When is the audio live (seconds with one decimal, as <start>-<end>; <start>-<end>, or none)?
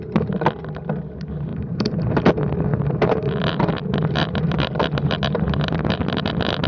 0.0-1.5; 2.2-2.7; 6.3-6.7